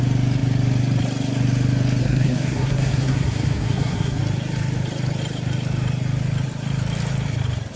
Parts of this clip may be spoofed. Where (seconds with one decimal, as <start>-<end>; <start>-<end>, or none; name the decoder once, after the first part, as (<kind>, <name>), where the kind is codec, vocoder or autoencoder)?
2.0-4.2 (codec, SNAC)